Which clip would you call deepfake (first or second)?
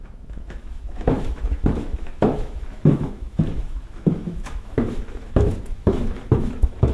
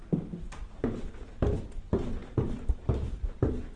first